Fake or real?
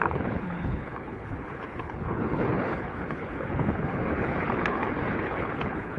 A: fake